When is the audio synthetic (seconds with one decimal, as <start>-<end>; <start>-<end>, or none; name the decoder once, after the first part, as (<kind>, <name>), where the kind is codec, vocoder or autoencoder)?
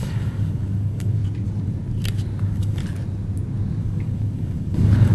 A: 0.0-1.2 (codec, DAC); 2.4-2.8; 3.8-5.1